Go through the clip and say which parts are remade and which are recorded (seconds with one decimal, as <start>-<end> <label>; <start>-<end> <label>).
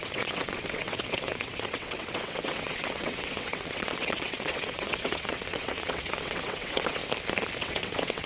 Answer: 0.0-7.0 remade; 7.0-7.6 recorded; 7.6-8.3 remade